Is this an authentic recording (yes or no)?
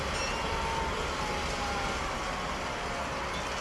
yes